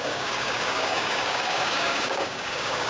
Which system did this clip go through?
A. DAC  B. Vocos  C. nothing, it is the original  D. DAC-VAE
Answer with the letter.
A